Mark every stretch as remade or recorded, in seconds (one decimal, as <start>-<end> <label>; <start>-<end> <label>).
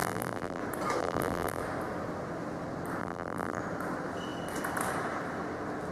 0.0-0.6 remade; 0.6-1.0 recorded; 1.0-1.6 remade; 1.6-3.0 recorded; 3.0-3.6 remade; 3.6-5.9 recorded